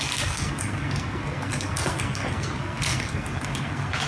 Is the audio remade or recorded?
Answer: remade